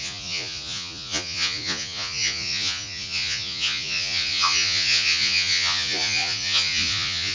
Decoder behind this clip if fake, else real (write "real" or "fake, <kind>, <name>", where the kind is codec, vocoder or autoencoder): fake, vocoder, Vocos